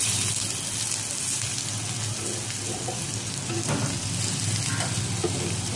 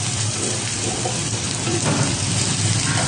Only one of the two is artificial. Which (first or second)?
second